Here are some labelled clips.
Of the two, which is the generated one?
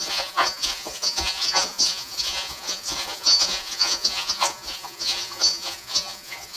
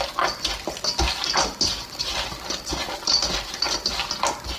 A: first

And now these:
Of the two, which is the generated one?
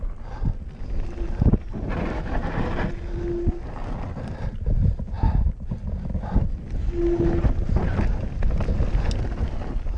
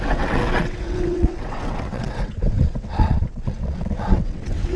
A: second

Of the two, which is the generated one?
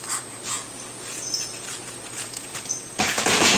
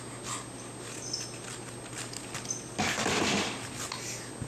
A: first